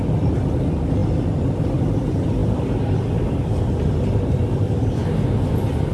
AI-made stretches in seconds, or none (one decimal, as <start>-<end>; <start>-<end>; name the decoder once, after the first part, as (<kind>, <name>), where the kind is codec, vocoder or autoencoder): none